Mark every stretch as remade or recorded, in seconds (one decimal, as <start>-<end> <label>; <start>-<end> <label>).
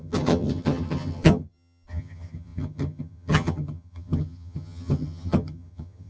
0.0-6.1 remade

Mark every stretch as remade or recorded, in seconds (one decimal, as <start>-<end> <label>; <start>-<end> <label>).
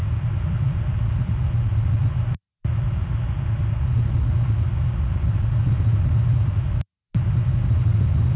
0.0-8.4 recorded